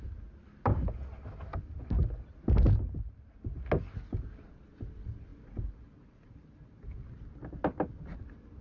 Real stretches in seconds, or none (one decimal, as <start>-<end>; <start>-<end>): 0.0-8.6